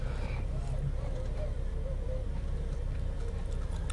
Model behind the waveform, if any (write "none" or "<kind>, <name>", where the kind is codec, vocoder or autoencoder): none